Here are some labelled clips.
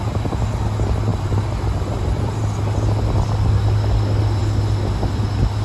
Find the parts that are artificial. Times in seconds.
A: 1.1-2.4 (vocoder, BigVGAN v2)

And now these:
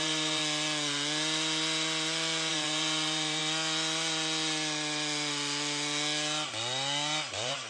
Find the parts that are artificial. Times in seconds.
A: 0.0-0.4 (vocoder, BigVGAN v2); 2.5-3.4; 7.3-7.7

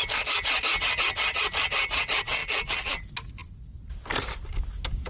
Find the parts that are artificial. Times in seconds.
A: 2.4-3.0 (vocoder, BigVGAN v2)

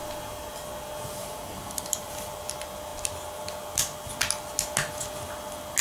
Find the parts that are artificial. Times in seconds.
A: 1.2-2.1 (vocoder, BigVGAN v2)

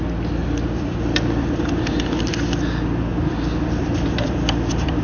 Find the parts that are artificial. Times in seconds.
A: 0.4-2.3 (vocoder, BigVGAN v2); 3.1-5.0

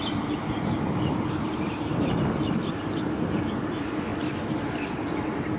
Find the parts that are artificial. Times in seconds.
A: 0.0-5.6 (vocoder, BigVGAN v2)

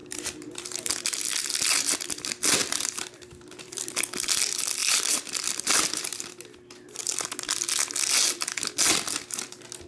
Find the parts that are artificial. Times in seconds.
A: 0.0-0.9 (vocoder, BigVGAN v2); 2.6-3.8; 4.8-6.2

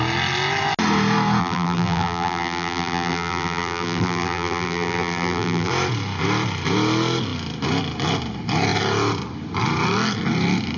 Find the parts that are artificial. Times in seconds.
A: 1.4-5.7 (vocoder, BigVGAN v2)